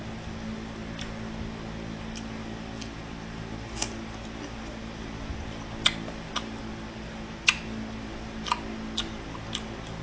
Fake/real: real